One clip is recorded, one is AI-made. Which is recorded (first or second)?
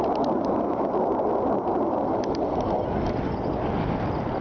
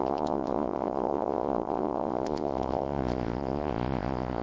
first